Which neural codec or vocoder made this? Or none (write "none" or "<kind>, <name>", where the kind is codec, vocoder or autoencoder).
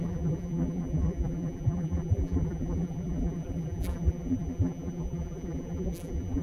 vocoder, BigVGAN v2